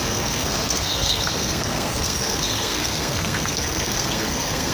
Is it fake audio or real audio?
fake